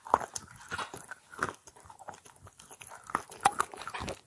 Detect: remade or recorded recorded